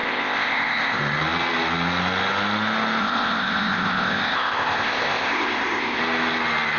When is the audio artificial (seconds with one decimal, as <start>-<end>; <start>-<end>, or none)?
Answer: 0.0-1.0; 3.0-6.0